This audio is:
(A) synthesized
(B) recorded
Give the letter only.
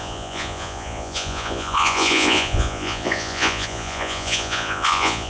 A